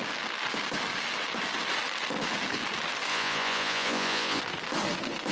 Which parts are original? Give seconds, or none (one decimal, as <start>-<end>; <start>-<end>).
0.0-3.1; 4.4-5.3